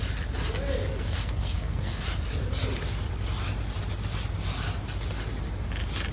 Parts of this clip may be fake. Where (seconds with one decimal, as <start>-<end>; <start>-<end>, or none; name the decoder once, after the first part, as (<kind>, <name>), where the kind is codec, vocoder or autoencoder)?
0.9-2.0 (codec, SNAC)